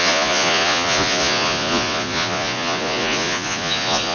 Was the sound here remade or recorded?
remade